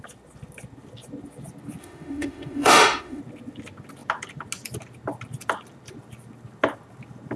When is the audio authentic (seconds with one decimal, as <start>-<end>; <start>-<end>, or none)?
0.0-1.8; 3.2-7.4